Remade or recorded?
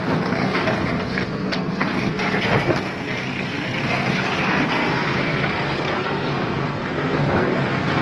remade